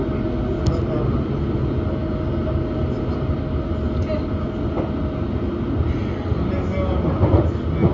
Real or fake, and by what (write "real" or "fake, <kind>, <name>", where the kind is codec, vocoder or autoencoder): real